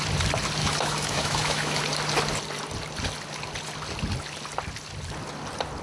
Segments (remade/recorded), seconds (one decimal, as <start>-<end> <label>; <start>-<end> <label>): 0.0-0.6 recorded; 0.6-1.8 remade; 1.8-5.8 recorded